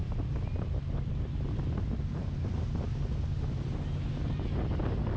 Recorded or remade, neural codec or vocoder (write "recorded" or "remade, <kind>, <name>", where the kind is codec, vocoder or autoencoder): recorded